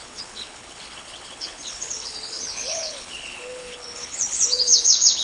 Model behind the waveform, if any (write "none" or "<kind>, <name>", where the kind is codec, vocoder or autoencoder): codec, HILCodec